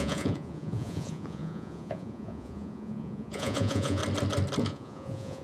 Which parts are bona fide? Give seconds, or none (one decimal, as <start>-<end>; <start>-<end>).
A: 4.0-4.6